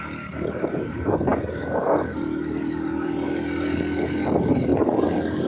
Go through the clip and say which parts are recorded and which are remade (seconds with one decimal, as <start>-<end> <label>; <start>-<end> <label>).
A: 0.0-5.5 remade